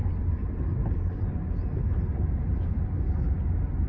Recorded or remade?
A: recorded